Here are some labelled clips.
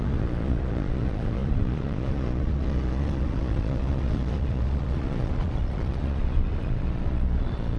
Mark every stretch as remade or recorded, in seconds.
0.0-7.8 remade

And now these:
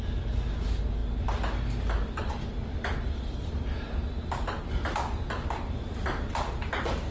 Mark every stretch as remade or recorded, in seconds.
0.0-7.1 recorded

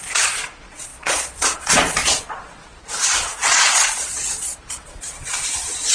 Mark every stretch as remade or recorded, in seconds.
0.0-5.9 remade

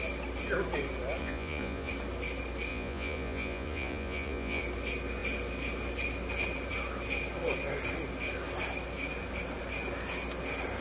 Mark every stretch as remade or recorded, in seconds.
0.0-1.2 recorded; 1.2-1.9 remade; 1.9-2.7 recorded; 2.7-4.6 remade; 4.6-10.8 recorded

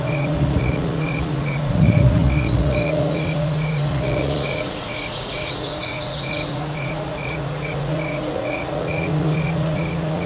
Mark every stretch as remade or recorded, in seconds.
0.0-10.3 remade

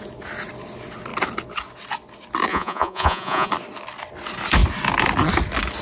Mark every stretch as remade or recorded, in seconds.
0.0-2.5 recorded; 2.5-3.5 remade; 3.5-5.8 recorded

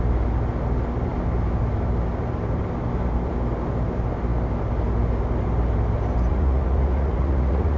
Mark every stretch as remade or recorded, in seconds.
0.0-6.3 recorded; 6.3-7.8 remade

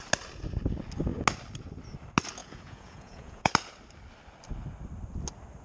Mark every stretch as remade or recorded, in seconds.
0.0-2.4 recorded; 2.4-3.5 remade; 3.5-5.6 recorded